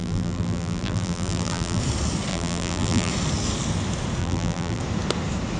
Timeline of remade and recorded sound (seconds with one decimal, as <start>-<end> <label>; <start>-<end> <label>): 0.0-1.8 remade; 1.8-2.3 recorded; 2.3-3.1 remade; 3.1-4.2 recorded; 4.2-4.8 remade; 4.8-5.6 recorded